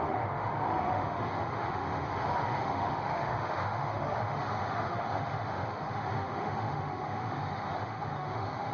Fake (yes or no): yes